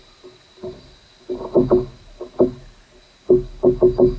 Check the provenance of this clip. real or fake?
real